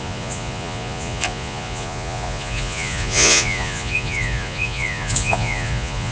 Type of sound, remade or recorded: remade